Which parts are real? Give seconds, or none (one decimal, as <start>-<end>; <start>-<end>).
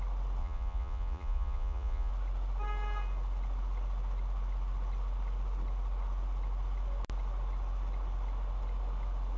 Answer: 0.0-0.4; 2.1-9.4